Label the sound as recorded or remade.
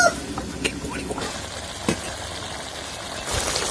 recorded